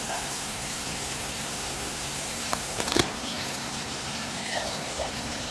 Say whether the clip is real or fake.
fake